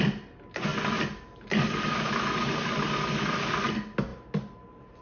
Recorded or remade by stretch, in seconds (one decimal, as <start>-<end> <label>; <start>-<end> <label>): 0.0-5.0 recorded